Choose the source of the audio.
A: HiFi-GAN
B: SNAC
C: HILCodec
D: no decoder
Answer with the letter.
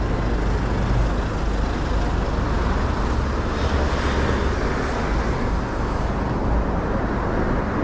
D